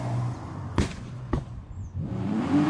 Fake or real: fake